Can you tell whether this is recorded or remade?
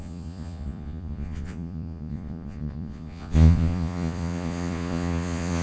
remade